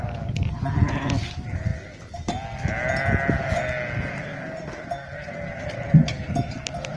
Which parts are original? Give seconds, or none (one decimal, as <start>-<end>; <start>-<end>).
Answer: 0.0-7.0